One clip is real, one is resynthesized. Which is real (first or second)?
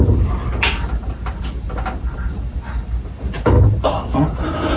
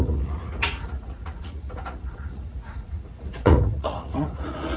first